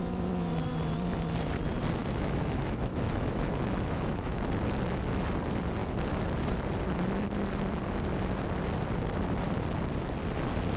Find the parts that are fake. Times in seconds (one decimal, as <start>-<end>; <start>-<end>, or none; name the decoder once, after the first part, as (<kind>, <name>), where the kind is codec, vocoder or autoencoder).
2.0-4.4 (autoencoder, DAC-VAE)